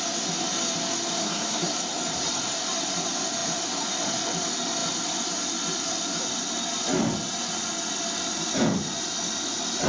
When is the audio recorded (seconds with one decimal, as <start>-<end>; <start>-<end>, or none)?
0.0-1.2; 1.7-9.9